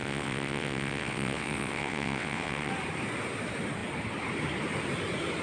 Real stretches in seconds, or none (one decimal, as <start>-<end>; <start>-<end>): 2.7-5.4